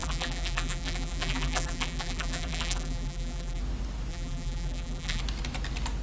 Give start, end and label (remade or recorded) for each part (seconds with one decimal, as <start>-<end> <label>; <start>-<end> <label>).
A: 0.0-3.6 remade; 3.6-4.1 recorded; 4.1-5.2 remade; 5.2-6.0 recorded